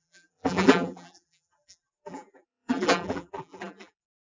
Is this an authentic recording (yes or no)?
no